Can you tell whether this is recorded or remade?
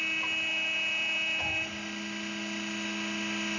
recorded